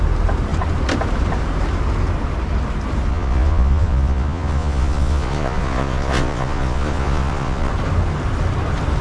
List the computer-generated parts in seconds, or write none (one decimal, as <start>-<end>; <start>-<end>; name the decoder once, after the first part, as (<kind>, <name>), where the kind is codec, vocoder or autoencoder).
3.1-7.7 (vocoder, Vocos)